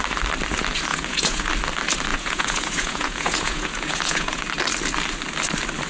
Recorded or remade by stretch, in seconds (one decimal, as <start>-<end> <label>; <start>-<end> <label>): 0.0-0.9 recorded; 0.9-1.5 remade; 1.5-2.1 recorded; 2.1-4.4 remade; 4.4-5.9 recorded